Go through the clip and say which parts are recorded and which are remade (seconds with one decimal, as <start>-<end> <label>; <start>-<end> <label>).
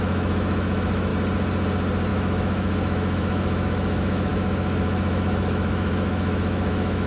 0.0-1.1 remade; 1.1-2.1 recorded; 2.1-7.1 remade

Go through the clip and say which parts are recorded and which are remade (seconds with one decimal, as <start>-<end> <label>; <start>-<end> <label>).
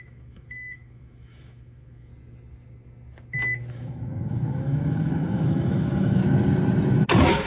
0.0-2.1 remade; 2.1-3.7 recorded; 3.7-6.2 remade; 6.2-7.1 recorded; 7.1-7.5 remade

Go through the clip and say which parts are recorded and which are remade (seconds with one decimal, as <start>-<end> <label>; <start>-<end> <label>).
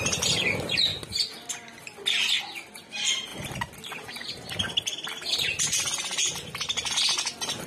0.0-7.7 recorded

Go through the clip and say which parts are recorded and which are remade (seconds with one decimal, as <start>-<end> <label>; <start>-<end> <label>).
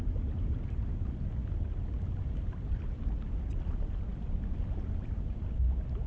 0.0-6.1 recorded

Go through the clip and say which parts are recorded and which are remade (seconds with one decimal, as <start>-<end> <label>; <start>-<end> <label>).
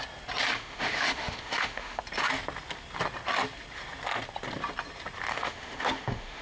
0.0-0.5 recorded; 0.5-2.0 remade; 2.0-5.3 recorded; 5.3-6.4 remade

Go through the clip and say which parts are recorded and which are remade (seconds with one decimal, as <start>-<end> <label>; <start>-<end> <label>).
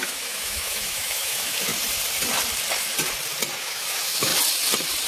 0.0-1.7 remade; 1.7-3.6 recorded; 3.6-4.3 remade; 4.3-5.1 recorded